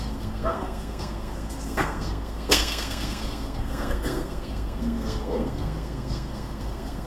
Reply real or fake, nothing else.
fake